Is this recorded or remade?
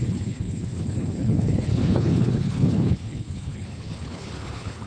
remade